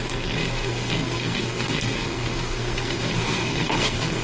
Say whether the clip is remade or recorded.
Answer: remade